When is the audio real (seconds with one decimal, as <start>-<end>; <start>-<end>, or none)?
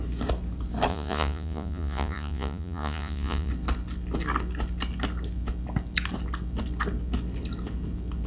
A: 0.0-0.9; 3.5-8.3